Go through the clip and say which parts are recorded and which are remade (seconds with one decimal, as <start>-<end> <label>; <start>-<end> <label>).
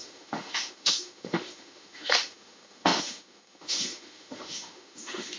0.0-5.4 remade